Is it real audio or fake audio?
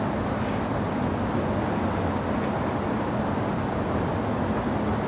real